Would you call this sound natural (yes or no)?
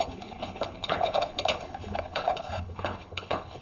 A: no